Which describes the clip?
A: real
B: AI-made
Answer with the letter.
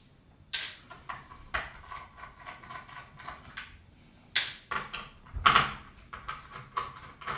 A